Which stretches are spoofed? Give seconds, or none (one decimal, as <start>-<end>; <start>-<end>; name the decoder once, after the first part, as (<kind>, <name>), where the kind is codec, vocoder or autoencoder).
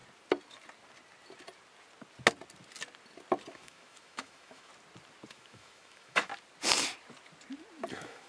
3.5-4.7 (autoencoder, DAC-VAE); 5.3-6.3; 7.9-8.3